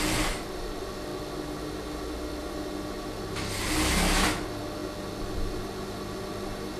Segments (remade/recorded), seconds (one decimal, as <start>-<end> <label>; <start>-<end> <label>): 0.0-6.8 recorded